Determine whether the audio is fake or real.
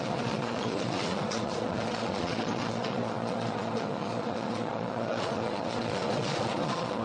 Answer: fake